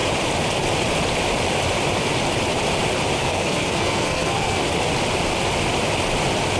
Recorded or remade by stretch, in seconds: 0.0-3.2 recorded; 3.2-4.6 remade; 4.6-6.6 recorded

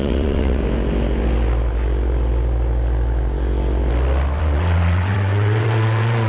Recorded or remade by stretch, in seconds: 0.0-0.6 remade; 0.6-4.4 recorded; 4.4-6.3 remade

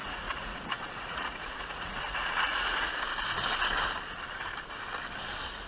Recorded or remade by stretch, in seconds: 0.0-3.0 remade; 3.0-5.7 recorded

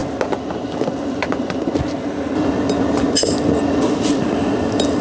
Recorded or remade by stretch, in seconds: 0.0-5.0 recorded

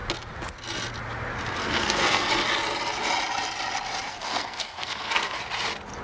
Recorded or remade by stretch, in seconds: 0.0-1.6 recorded; 1.6-2.3 remade; 2.3-4.1 recorded; 4.1-5.4 remade; 5.4-6.0 recorded

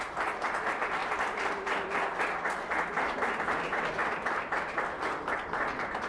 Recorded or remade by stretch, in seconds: 0.0-1.0 recorded; 1.0-2.1 remade; 2.1-4.0 recorded; 4.0-4.6 remade; 4.6-6.1 recorded

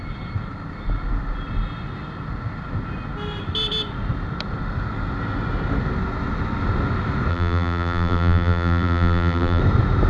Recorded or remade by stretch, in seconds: 0.0-7.3 recorded; 7.3-9.6 remade; 9.6-10.1 recorded